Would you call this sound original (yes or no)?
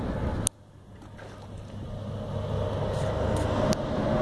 yes